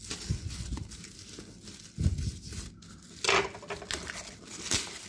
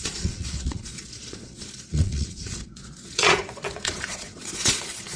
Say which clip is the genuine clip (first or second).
first